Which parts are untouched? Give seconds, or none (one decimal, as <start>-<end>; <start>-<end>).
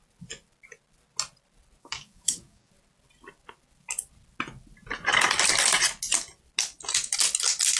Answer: 0.0-1.8; 2.7-7.8